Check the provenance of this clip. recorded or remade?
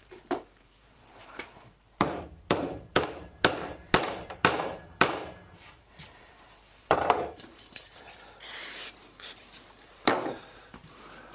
remade